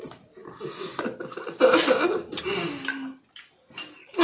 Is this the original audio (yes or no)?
yes